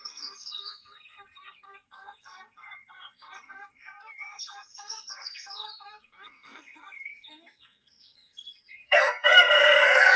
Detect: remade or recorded remade